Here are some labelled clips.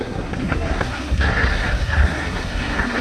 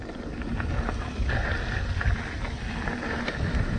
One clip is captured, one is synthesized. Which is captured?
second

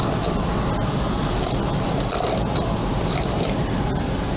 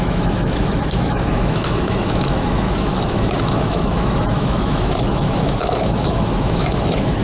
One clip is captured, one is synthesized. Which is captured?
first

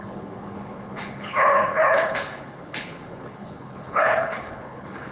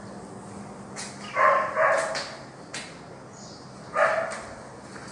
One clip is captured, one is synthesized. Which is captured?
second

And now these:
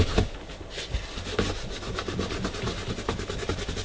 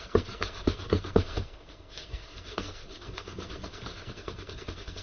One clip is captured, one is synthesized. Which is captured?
first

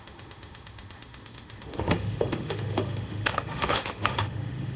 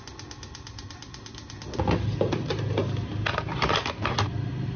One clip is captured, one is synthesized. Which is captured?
second